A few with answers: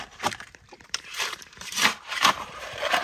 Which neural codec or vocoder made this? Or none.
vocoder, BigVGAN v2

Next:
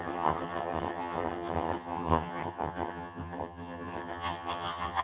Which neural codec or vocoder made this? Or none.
vocoder, HiFi-GAN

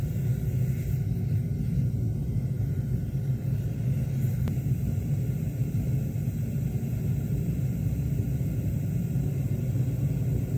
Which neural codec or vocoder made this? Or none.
none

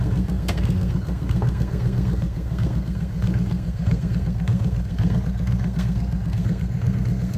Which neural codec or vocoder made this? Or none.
codec, SNAC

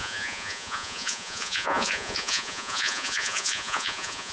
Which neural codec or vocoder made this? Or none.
vocoder, Vocos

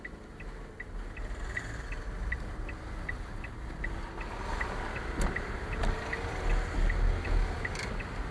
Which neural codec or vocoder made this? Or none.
none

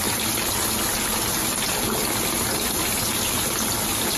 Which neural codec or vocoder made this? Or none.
none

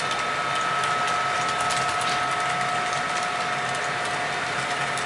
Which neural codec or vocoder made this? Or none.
none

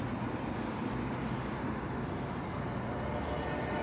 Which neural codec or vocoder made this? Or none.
none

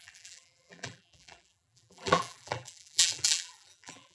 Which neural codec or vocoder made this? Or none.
vocoder, BigVGAN v2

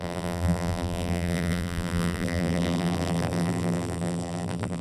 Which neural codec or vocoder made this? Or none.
vocoder, BigVGAN v2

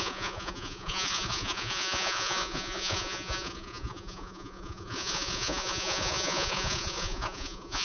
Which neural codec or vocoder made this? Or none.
vocoder, Vocos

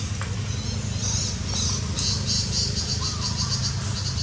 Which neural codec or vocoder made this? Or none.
none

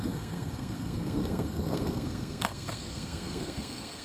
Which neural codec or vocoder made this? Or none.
codec, SNAC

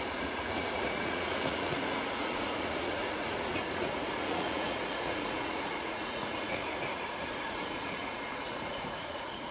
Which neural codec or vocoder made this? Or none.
vocoder, Vocos